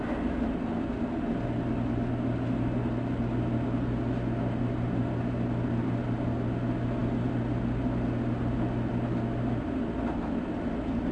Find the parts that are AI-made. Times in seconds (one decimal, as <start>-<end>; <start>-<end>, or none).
none